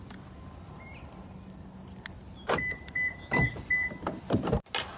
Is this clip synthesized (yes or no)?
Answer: no